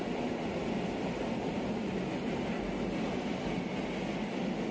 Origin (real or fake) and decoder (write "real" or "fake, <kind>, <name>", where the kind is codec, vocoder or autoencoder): real